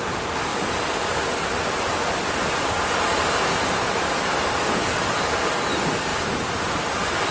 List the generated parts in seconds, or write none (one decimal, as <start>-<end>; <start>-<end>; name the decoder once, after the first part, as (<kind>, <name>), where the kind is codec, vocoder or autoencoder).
0.5-2.2 (vocoder, BigVGAN v2)